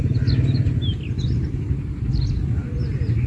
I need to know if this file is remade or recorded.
recorded